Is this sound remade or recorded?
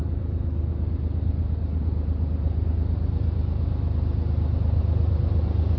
recorded